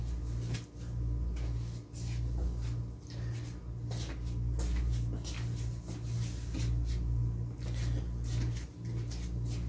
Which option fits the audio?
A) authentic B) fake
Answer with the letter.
A